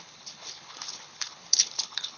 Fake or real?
fake